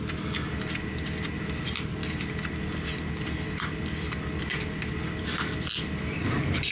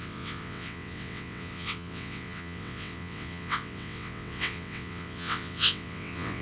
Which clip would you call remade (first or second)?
second